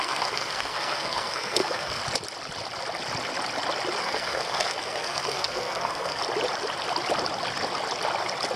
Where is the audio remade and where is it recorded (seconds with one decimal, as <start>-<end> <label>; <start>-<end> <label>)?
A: 0.0-2.0 remade; 2.0-4.0 recorded; 4.0-6.2 remade; 6.2-8.6 recorded